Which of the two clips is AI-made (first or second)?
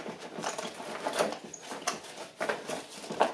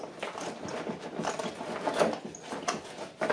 first